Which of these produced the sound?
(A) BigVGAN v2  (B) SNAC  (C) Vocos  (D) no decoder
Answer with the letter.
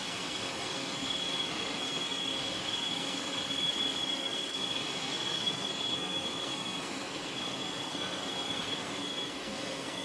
B